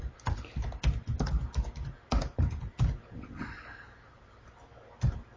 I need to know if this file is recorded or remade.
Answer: recorded